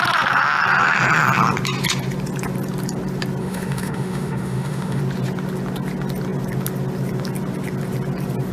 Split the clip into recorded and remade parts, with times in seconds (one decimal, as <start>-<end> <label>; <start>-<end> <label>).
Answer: 0.0-3.4 recorded; 3.4-5.0 remade; 5.0-8.5 recorded